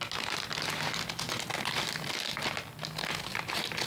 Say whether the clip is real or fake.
real